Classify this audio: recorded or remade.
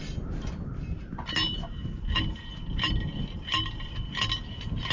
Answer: recorded